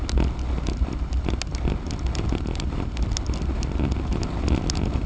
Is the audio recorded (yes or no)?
yes